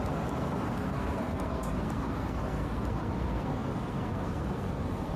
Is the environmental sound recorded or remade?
remade